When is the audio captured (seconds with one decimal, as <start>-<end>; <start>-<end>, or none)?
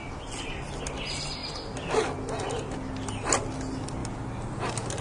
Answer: 0.0-5.0